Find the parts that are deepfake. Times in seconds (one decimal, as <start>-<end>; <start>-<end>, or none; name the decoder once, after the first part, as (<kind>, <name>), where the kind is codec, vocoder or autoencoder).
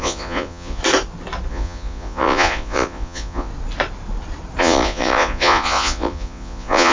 0.0-0.8 (vocoder, Vocos); 1.5-3.5; 4.6-6.9